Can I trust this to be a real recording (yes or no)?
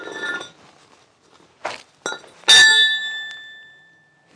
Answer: yes